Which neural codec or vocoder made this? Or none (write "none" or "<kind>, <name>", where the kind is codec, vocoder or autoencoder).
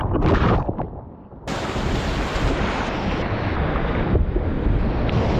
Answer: none